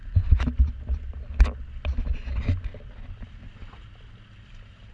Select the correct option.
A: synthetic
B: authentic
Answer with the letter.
B